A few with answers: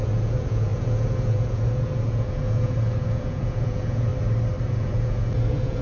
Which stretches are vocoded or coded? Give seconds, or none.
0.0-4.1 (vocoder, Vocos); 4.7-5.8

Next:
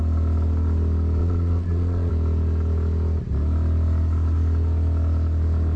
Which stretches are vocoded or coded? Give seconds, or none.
1.2-2.1 (vocoder, Vocos)

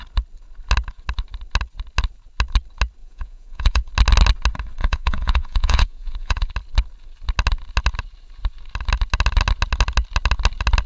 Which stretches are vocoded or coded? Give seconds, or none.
3.0-3.9 (vocoder, Vocos); 4.8-6.5

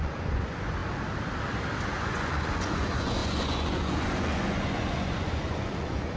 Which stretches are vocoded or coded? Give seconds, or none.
0.0-0.8 (vocoder, Vocos); 2.0-6.2

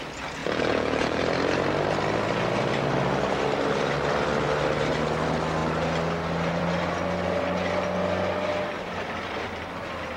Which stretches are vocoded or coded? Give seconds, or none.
0.4-1.2 (vocoder, Vocos)

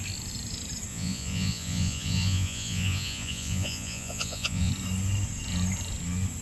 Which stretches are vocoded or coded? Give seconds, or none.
0.9-4.7 (vocoder, Vocos)